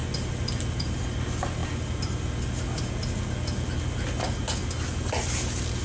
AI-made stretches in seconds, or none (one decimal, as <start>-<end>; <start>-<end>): none